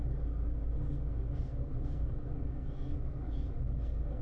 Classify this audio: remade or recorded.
remade